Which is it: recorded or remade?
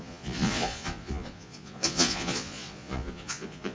remade